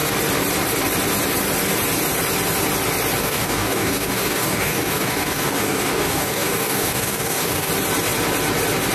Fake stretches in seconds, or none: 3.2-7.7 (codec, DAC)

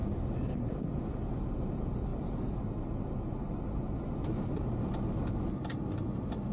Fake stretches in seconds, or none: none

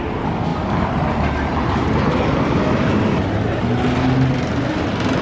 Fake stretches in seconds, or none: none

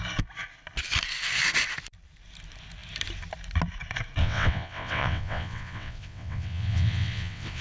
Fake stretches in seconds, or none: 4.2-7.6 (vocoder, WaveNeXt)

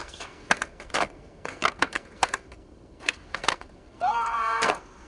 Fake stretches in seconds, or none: 0.0-5.1 (codec, SNAC)

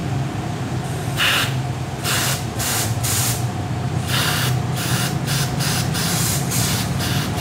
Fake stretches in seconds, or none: 0.0-4.3 (vocoder, BigVGAN v2)

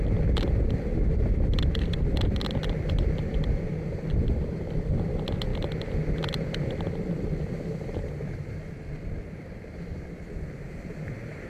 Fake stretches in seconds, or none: 0.9-2.8 (vocoder, BigVGAN v2)